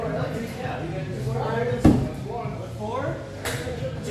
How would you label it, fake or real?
real